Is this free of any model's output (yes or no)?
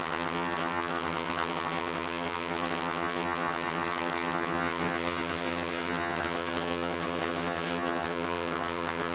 no